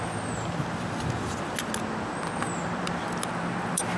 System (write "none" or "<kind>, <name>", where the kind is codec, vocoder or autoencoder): none